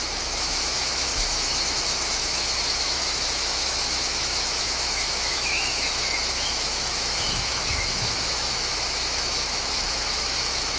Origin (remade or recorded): remade